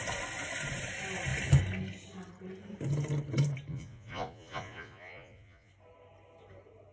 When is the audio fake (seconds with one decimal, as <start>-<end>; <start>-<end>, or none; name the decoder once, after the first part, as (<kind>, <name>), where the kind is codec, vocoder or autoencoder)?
3.7-5.7 (vocoder, Vocos)